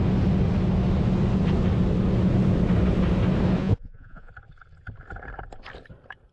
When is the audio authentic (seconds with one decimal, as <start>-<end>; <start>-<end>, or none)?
0.0-3.6; 4.3-6.3